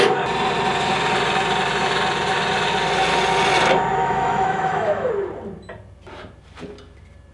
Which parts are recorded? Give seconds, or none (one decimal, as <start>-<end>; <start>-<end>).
0.0-4.0; 5.1-7.3